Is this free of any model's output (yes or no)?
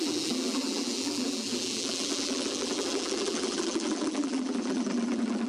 no